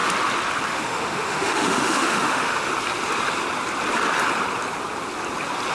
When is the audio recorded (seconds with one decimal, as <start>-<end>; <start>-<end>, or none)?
0.0-0.7; 2.7-5.7